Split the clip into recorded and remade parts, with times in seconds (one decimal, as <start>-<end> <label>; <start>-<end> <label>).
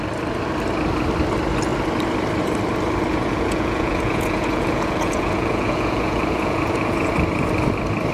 0.0-3.1 recorded; 3.1-7.1 remade; 7.1-8.1 recorded